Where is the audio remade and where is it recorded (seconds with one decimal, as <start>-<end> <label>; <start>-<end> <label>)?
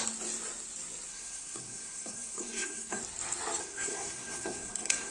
0.0-1.1 recorded; 1.1-3.0 remade; 3.0-3.6 recorded; 3.6-5.1 remade